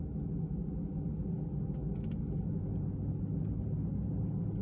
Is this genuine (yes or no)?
yes